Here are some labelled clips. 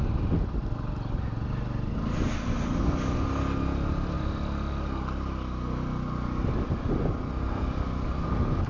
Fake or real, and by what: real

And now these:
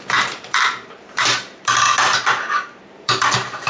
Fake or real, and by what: fake, vocoder, BigVGAN v2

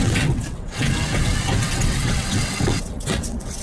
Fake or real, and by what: fake, vocoder, WaveNeXt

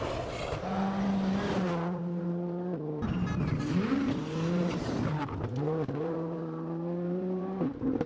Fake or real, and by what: fake, vocoder, BigVGAN v2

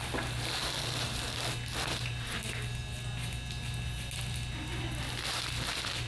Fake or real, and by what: real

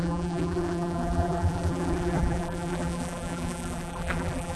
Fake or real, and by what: fake, vocoder, BigVGAN v2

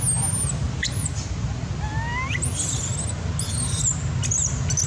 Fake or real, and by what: real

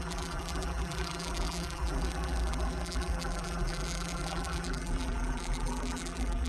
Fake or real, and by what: fake, vocoder, BigVGAN v2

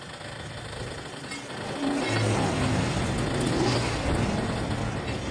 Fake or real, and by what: real